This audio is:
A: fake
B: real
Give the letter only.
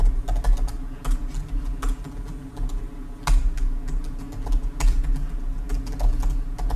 B